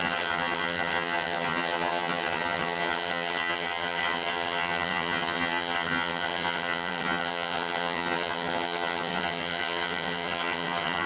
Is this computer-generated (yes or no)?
yes